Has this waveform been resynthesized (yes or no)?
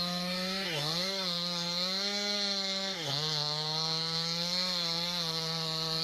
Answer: yes